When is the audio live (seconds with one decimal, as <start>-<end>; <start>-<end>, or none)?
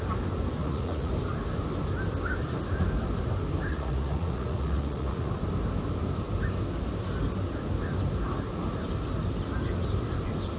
0.0-0.6; 1.1-3.7; 5.3-10.6